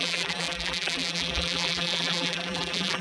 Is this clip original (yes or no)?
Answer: no